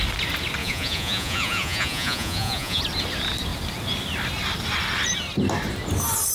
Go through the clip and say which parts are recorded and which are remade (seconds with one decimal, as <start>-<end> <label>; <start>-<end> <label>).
0.0-0.6 recorded; 0.6-2.8 remade; 2.8-6.3 recorded